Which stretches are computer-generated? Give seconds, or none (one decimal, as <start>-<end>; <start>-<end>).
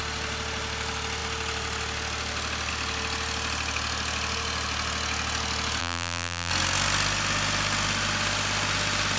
5.8-6.5